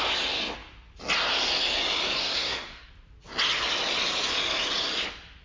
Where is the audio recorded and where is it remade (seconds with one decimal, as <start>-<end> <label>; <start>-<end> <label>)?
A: 0.0-2.2 recorded; 2.2-2.9 remade; 2.9-5.4 recorded